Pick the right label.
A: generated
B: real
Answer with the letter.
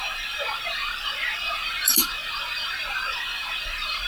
A